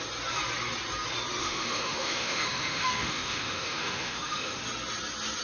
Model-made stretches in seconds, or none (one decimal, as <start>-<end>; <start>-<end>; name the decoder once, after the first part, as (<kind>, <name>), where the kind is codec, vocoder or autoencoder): 1.4-4.6 (autoencoder, DAC-VAE)